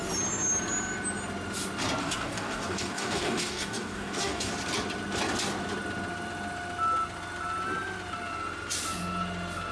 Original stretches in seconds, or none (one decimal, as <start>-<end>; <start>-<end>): 0.0-2.0; 4.5-9.7